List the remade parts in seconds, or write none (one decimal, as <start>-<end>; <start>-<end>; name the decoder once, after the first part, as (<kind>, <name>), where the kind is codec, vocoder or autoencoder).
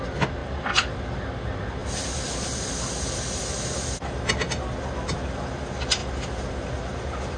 0.4-1.2 (vocoder, BigVGAN v2); 1.8-4.1; 6.0-6.7